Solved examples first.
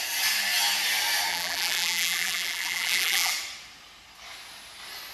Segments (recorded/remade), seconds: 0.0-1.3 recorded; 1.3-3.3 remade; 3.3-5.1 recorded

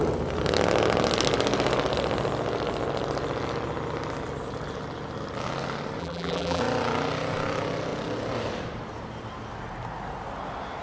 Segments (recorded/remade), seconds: 0.0-6.0 recorded; 6.0-6.6 remade; 6.6-10.8 recorded

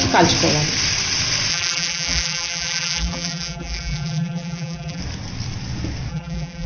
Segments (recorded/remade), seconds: 0.0-1.5 recorded; 1.5-5.0 remade; 5.0-6.1 recorded; 6.1-6.7 remade

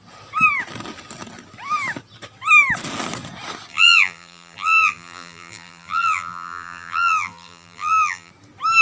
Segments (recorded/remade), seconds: 0.0-3.7 recorded; 3.7-8.3 remade; 8.3-8.8 recorded

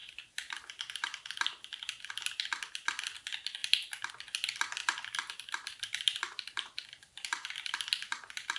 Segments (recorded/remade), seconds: 0.0-2.1 remade; 2.1-3.6 recorded; 3.6-4.1 remade; 4.1-4.8 recorded; 4.8-8.6 remade